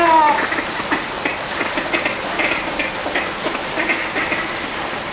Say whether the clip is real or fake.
real